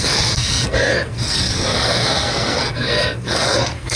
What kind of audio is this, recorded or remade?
remade